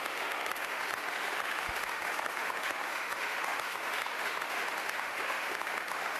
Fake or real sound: fake